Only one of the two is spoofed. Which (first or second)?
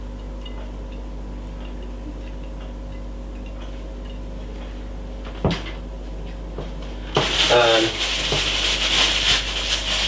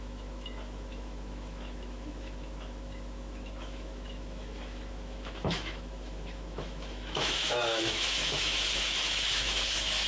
second